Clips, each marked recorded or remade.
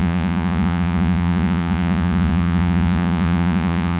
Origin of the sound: remade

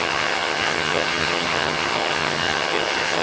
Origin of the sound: remade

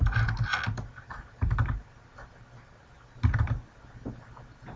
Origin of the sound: recorded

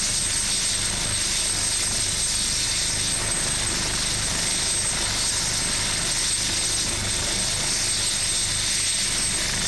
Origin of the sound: recorded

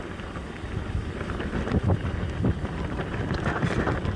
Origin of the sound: recorded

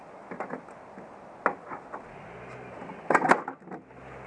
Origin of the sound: recorded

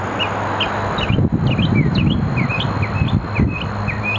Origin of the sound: recorded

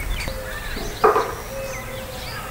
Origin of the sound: recorded